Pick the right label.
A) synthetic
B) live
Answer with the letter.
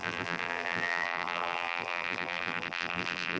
A